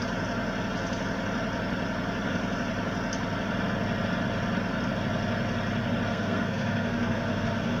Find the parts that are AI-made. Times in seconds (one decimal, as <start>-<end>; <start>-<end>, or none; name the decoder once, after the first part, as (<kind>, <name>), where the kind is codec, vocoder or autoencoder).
6.1-7.8 (codec, SNAC)